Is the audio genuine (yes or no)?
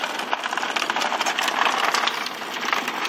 yes